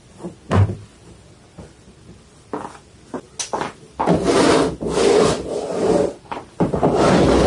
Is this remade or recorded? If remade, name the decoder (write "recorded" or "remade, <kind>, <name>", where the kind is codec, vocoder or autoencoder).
recorded